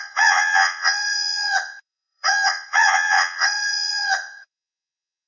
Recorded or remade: remade